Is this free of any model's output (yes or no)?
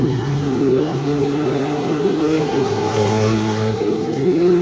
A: no